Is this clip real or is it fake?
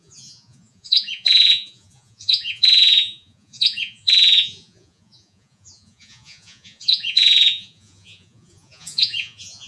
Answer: fake